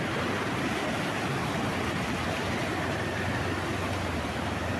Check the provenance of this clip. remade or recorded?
recorded